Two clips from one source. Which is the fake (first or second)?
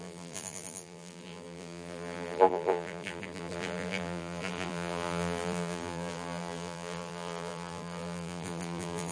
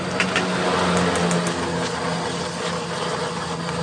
first